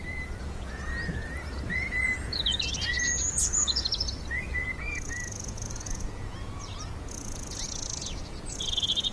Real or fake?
fake